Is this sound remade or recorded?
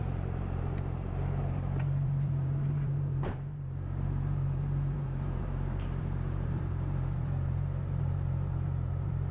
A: remade